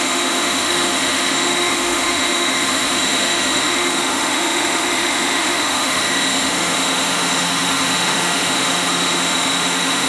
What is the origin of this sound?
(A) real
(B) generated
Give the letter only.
B